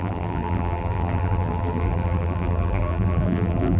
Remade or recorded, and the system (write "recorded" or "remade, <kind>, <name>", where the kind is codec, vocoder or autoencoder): remade, vocoder, BigVGAN v2